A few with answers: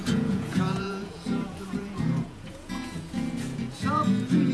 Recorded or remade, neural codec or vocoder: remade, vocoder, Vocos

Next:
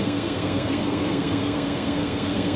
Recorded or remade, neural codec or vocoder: remade, codec, SNAC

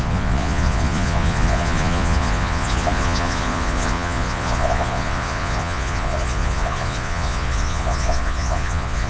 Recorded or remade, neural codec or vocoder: remade, vocoder, Vocos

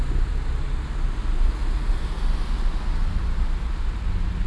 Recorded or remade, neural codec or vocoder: recorded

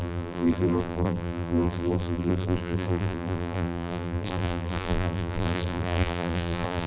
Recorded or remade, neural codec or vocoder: remade, vocoder, BigVGAN v2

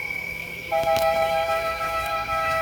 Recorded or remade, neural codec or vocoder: remade, autoencoder, DAC-VAE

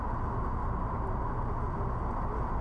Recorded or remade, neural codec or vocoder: recorded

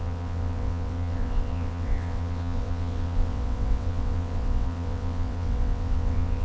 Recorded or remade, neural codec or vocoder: remade, vocoder, WaveNeXt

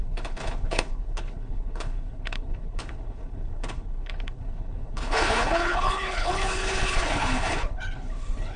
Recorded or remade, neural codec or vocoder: remade, codec, HILCodec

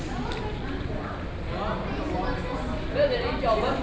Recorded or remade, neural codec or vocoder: recorded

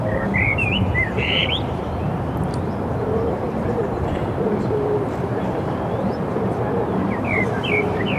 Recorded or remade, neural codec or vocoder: remade, vocoder, BigVGAN v2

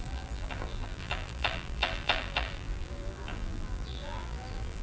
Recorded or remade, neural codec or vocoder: remade, vocoder, BigVGAN v2